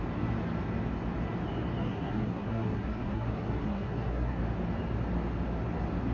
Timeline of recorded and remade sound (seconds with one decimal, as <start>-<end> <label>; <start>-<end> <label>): 0.0-1.8 recorded; 1.8-4.4 remade; 4.4-6.1 recorded